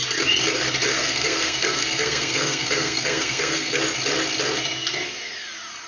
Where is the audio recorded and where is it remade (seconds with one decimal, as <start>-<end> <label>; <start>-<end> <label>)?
0.0-0.9 recorded; 0.9-3.8 remade; 3.8-5.9 recorded